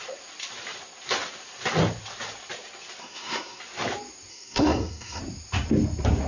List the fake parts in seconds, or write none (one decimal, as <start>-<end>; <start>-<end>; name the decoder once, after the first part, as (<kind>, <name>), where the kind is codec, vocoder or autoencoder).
3.0-3.6 (codec, SNAC); 4.3-5.2